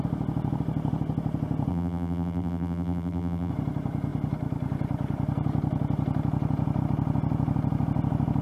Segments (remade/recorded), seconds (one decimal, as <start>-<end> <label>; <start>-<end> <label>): 0.0-1.7 recorded; 1.7-3.5 remade; 3.5-8.4 recorded